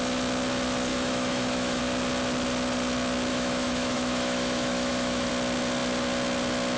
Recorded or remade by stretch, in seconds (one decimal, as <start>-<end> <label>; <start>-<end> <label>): 0.0-0.9 recorded; 0.9-1.8 remade; 1.8-3.3 recorded; 3.3-5.3 remade; 5.3-6.8 recorded